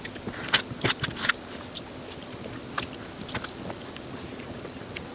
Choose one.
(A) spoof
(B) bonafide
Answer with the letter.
B